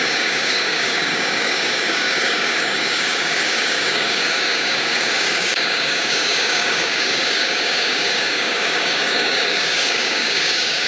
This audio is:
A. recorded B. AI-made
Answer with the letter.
B